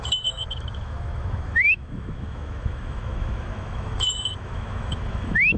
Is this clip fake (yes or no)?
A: yes